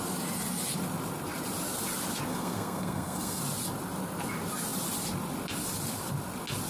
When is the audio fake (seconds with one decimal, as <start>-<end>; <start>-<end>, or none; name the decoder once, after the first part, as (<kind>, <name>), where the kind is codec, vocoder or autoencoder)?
2.3-3.4 (codec, SNAC)